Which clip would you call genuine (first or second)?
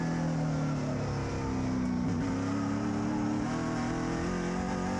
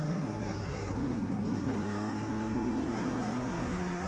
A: first